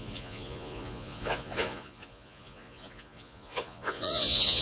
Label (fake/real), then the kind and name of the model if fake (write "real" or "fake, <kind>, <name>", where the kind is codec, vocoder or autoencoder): fake, vocoder, Vocos